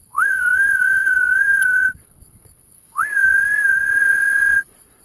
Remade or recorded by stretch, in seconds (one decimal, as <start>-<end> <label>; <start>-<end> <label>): 0.0-5.0 remade